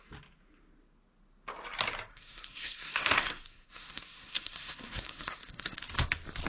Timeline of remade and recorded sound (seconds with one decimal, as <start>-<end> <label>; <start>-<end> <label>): 0.0-2.1 recorded; 2.1-5.8 remade; 5.8-6.5 recorded